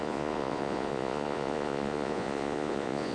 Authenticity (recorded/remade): remade